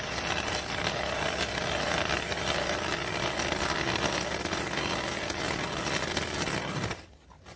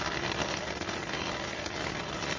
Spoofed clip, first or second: second